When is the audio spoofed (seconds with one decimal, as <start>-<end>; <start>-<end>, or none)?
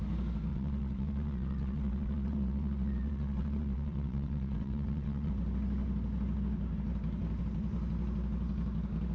0.5-5.3